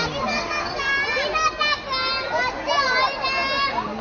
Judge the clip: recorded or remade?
recorded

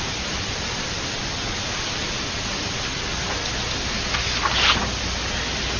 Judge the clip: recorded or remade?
recorded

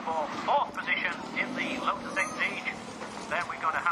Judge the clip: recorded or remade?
remade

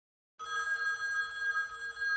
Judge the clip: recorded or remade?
recorded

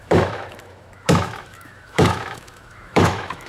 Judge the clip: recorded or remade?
remade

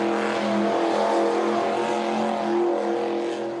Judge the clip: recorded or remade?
recorded